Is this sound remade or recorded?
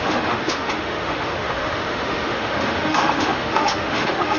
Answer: remade